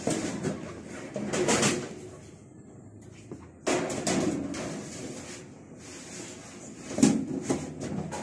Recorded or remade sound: recorded